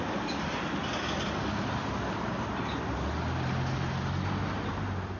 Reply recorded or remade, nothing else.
recorded